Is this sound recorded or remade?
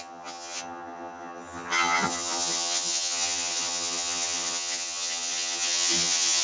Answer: remade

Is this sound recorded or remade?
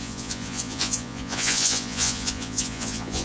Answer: remade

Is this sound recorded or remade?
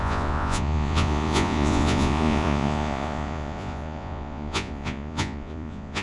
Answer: remade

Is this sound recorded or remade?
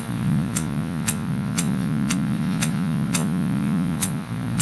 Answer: remade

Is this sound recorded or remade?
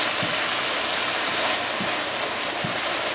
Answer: recorded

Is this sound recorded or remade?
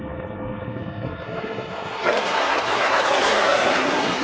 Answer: remade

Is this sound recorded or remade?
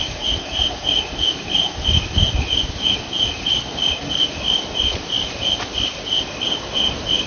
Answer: recorded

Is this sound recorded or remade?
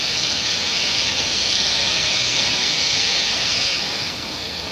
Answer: remade